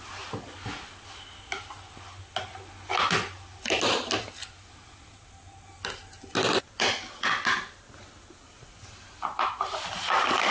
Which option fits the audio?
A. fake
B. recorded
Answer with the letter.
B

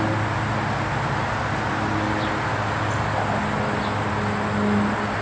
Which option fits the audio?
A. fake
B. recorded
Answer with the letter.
B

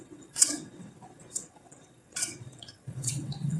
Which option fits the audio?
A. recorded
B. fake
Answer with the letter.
B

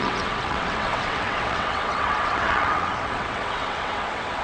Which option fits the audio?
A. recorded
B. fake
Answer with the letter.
B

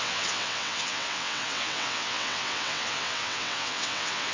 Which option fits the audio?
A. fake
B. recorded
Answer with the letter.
A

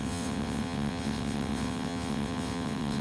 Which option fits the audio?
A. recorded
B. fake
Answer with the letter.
B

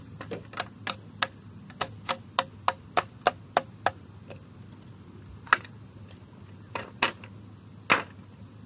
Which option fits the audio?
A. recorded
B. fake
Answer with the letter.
A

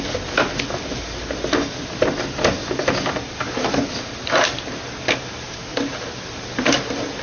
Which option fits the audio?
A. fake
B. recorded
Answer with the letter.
B